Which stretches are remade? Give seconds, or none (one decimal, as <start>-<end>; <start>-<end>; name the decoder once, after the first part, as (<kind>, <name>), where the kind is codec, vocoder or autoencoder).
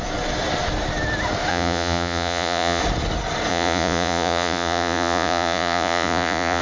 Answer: 1.5-2.8 (vocoder, Vocos); 3.5-6.6